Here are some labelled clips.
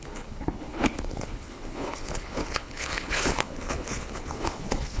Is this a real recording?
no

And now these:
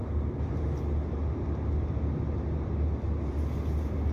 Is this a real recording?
yes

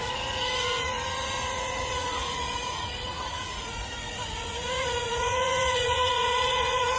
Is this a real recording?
no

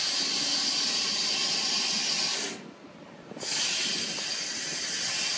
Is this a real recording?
yes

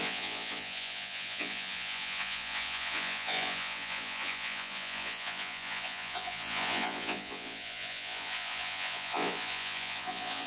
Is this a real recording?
no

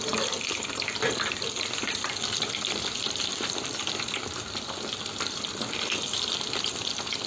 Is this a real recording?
no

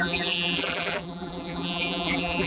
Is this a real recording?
no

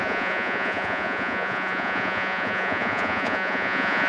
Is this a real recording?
no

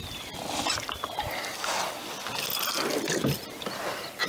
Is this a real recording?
yes